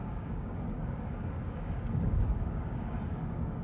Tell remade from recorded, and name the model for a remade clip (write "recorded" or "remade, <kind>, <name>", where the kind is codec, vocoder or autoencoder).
remade, codec, DAC